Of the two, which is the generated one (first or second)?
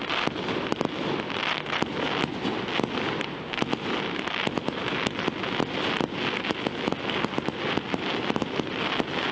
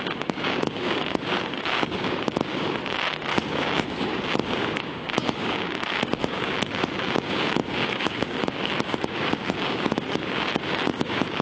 second